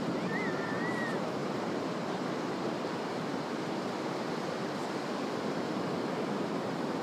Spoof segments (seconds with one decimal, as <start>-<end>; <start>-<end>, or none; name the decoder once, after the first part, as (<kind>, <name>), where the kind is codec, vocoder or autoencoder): 1.4-4.3 (vocoder, BigVGAN v2)